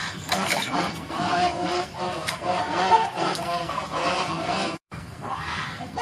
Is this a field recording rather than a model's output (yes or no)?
no